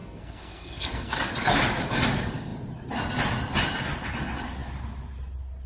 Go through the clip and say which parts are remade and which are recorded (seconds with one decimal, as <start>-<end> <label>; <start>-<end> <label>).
0.0-1.3 remade; 1.3-5.7 recorded